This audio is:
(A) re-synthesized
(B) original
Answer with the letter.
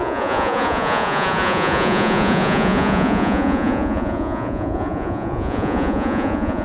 A